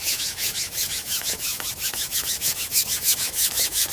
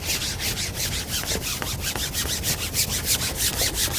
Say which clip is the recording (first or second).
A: second